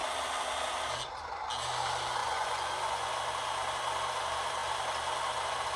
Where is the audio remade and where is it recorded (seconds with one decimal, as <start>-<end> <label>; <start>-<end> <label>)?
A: 0.0-2.2 recorded; 2.2-3.1 remade; 3.1-5.8 recorded